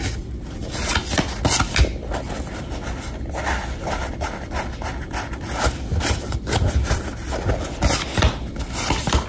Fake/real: real